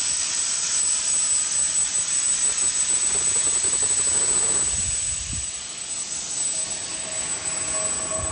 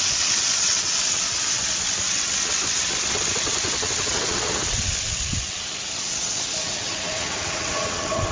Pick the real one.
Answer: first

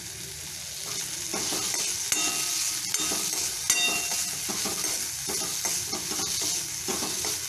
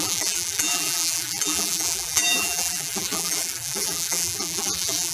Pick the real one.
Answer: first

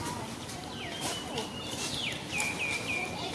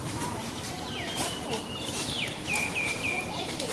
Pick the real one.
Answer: first